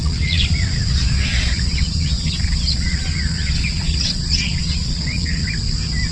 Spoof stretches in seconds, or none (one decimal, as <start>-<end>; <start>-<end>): 0.0-5.4